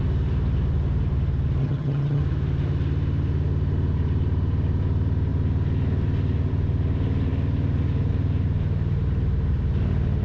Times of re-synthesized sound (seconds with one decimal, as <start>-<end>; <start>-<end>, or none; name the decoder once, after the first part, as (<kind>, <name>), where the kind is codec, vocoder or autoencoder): 1.6-2.2 (vocoder, HiFi-GAN)